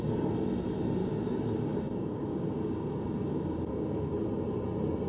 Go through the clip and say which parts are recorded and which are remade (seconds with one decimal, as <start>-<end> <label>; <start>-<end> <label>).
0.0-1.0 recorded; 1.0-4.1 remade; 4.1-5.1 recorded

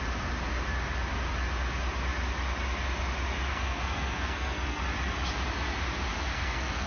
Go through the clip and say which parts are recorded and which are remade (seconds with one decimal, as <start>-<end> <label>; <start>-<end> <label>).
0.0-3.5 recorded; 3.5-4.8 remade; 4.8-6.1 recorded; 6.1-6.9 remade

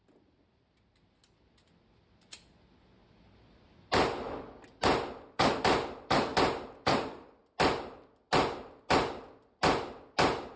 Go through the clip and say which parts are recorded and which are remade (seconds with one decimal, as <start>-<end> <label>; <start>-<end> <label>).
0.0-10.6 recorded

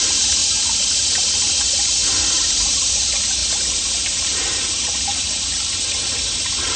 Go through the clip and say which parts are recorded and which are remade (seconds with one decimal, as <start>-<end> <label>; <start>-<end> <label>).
0.0-6.8 recorded